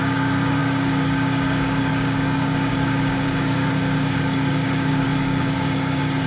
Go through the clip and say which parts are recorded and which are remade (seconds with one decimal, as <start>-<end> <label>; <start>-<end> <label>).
0.0-6.3 remade